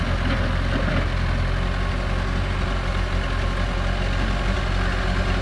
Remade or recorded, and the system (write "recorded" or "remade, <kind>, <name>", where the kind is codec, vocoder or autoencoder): recorded